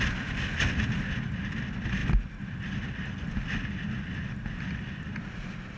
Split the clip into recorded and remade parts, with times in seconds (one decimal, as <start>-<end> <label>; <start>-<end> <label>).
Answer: 0.0-5.8 recorded

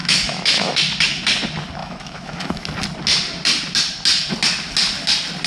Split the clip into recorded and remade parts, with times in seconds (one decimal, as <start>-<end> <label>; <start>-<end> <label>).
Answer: 0.0-0.8 remade; 0.8-1.8 recorded; 1.8-2.7 remade; 2.7-5.5 recorded

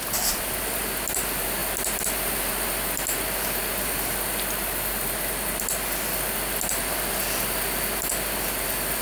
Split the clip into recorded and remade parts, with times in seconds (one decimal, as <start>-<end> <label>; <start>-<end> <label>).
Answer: 0.0-9.0 recorded

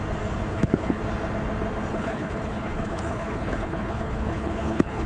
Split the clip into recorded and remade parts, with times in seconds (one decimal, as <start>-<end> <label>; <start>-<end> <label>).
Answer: 0.0-0.5 recorded; 0.5-1.0 remade; 1.0-1.9 recorded; 1.9-5.1 remade

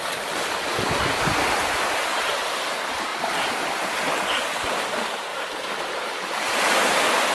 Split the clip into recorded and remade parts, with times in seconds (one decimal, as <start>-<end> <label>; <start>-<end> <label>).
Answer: 0.0-7.3 recorded

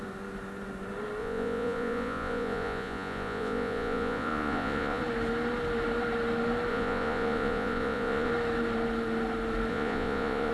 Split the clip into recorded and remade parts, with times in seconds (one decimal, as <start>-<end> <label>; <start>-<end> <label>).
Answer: 0.0-1.2 recorded; 1.2-5.0 remade; 5.0-6.7 recorded; 6.7-8.3 remade; 8.3-9.7 recorded; 9.7-10.5 remade

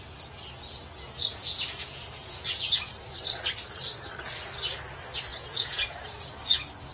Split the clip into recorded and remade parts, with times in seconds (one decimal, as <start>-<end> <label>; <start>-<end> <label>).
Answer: 0.0-1.3 recorded; 1.3-2.9 remade; 2.9-5.3 recorded; 5.3-6.3 remade; 6.3-6.9 recorded

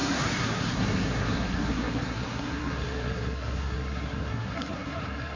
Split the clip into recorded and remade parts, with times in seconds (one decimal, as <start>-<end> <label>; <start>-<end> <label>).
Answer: 0.0-5.4 remade